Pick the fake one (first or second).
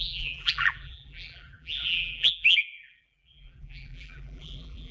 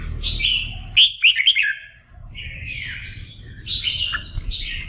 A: first